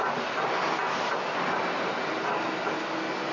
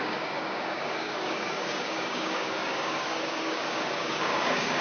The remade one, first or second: second